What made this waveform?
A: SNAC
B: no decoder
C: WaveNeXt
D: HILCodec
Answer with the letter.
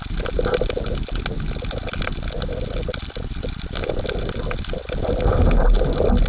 B